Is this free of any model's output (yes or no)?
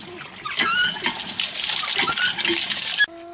yes